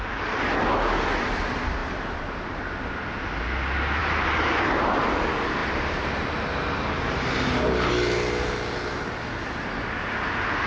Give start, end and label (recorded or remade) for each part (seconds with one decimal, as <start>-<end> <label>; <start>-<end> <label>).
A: 0.0-1.8 recorded; 1.8-2.6 remade; 2.6-4.0 recorded; 4.0-5.1 remade; 5.1-5.6 recorded; 5.6-7.9 remade; 7.9-10.7 recorded